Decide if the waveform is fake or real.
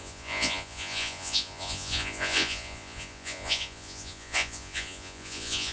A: fake